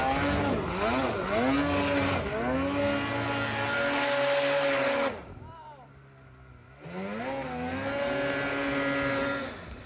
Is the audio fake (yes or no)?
no